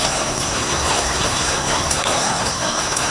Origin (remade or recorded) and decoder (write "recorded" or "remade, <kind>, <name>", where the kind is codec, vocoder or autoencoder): remade, codec, SNAC